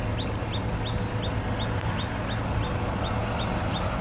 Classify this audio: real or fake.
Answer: real